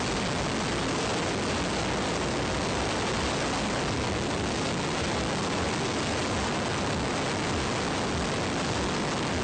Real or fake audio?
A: real